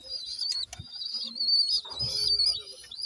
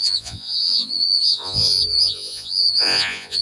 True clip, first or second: first